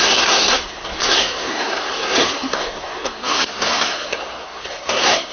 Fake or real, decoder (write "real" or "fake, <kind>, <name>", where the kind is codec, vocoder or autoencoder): fake, codec, SNAC